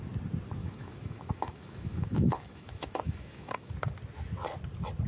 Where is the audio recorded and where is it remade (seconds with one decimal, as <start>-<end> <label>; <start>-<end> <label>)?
0.0-0.6 recorded; 0.6-3.7 remade; 3.7-5.1 recorded